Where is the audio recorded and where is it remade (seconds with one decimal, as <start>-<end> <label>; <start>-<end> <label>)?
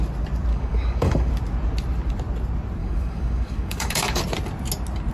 0.0-0.5 recorded; 0.5-1.3 remade; 1.3-2.8 recorded; 2.8-4.2 remade; 4.2-5.1 recorded